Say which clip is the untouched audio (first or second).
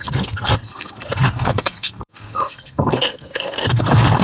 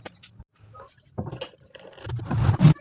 second